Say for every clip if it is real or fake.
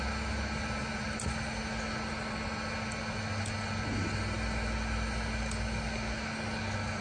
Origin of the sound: real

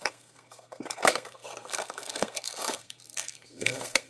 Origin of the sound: fake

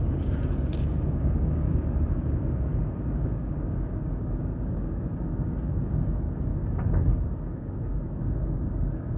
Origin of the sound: fake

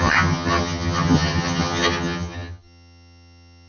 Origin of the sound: fake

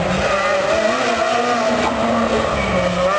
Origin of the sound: real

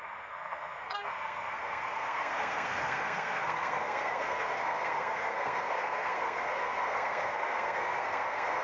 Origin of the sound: fake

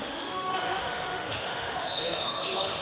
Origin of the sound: fake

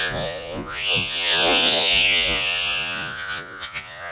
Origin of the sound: fake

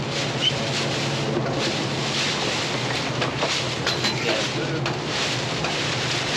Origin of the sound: real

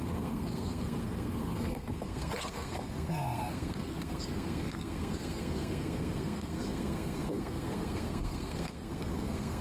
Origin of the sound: fake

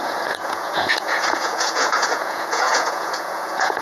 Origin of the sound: fake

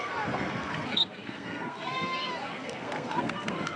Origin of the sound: fake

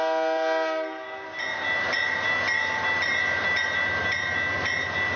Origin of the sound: real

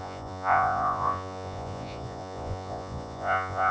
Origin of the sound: fake